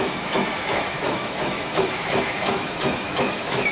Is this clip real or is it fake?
fake